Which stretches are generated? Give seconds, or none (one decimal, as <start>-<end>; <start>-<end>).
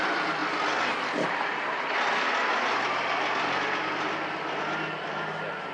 none